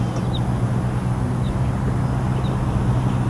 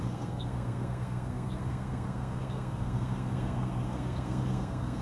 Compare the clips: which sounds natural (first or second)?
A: first